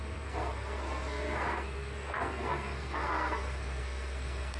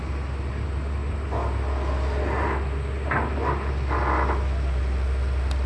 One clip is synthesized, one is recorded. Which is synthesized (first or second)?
first